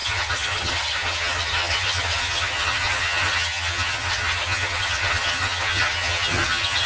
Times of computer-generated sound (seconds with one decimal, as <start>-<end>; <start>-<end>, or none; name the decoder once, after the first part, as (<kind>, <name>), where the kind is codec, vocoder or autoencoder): 0.0-6.9 (vocoder, HiFi-GAN)

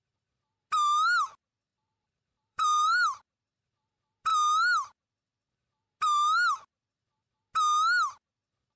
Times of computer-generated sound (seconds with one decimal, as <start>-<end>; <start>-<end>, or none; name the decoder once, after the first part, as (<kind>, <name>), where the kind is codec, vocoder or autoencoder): 1.7-3.9 (vocoder, BigVGAN v2)